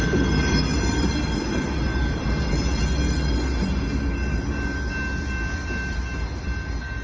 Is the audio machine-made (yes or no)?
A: no